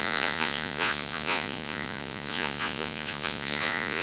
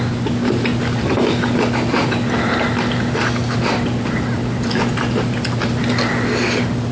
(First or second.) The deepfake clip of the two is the first